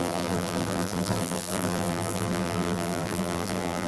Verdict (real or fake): fake